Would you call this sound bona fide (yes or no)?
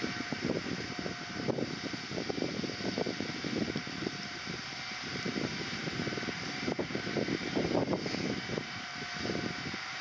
no